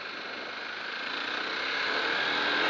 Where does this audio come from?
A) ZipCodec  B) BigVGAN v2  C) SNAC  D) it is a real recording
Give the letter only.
D